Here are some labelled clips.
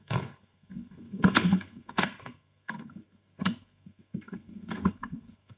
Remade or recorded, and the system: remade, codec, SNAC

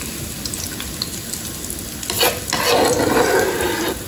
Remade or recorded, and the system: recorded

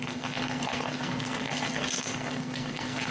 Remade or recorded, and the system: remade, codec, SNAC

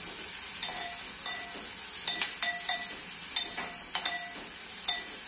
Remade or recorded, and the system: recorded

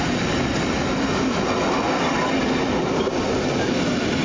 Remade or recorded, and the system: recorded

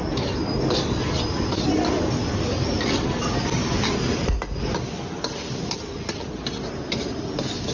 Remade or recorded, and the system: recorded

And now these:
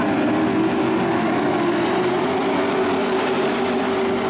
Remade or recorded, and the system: recorded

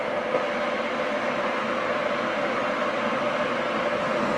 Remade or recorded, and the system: recorded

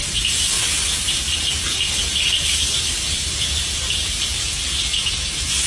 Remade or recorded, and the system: recorded